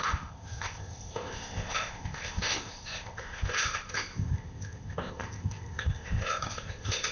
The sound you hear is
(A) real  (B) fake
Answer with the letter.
B